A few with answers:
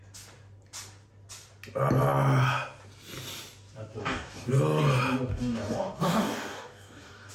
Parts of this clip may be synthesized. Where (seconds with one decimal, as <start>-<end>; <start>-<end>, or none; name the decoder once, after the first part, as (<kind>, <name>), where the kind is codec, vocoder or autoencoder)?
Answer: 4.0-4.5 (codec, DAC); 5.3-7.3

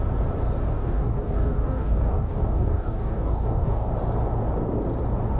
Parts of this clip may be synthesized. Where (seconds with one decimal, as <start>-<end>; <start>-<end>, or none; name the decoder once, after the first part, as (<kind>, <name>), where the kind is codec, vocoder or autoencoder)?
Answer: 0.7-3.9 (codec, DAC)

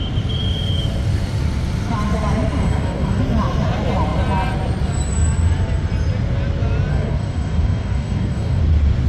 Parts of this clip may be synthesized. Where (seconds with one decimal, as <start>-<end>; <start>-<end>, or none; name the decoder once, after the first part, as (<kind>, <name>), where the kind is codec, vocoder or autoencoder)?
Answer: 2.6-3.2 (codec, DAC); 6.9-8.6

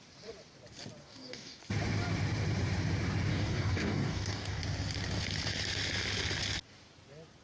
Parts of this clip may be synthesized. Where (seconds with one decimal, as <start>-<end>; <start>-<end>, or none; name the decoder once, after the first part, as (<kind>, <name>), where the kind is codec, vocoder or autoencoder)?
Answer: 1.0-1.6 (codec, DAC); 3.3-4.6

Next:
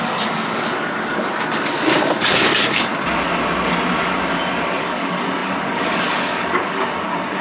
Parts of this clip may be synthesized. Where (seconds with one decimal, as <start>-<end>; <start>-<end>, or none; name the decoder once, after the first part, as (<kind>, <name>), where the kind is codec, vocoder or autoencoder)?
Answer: 0.0-2.9 (codec, DAC); 4.8-7.4